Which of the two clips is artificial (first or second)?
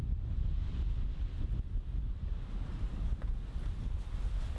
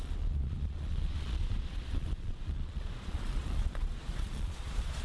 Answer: second